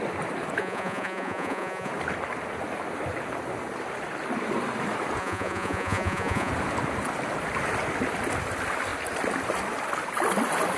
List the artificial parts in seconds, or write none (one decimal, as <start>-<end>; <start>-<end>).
0.6-1.9; 5.2-6.5